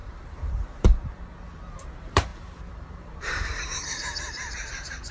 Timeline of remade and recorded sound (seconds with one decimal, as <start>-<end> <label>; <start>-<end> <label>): 0.0-0.9 remade; 0.9-1.7 recorded; 1.7-5.1 remade